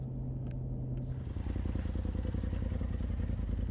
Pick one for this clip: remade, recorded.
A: recorded